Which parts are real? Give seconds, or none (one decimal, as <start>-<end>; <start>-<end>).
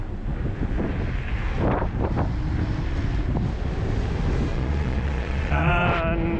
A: 0.0-4.5; 5.7-6.4